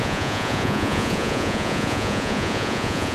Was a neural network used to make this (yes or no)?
yes